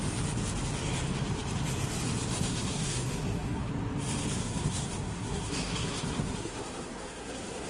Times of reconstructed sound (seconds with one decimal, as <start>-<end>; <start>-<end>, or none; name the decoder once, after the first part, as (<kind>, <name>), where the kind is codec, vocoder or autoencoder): 2.3-3.7 (codec, SNAC); 4.4-7.7